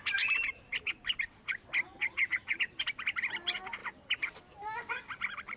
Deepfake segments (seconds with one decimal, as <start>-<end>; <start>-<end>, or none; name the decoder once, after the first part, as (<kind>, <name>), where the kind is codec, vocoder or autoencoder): 3.8-4.4 (vocoder, BigVGAN v2)